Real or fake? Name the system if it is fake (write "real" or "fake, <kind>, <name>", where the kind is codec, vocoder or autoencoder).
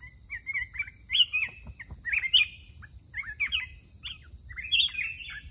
real